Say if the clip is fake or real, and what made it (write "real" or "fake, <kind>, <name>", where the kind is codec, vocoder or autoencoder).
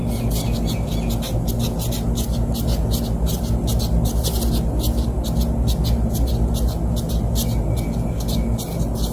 real